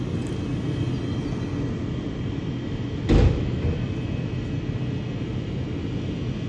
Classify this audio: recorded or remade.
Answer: recorded